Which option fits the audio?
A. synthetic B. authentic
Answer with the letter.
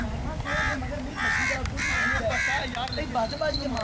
B